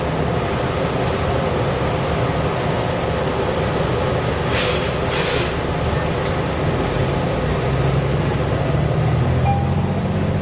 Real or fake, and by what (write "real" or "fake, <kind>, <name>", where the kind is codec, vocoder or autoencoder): real